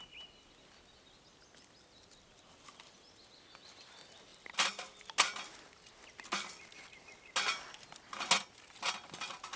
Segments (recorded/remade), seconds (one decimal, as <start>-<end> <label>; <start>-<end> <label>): 0.0-9.6 recorded